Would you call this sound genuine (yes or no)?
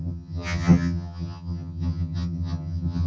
no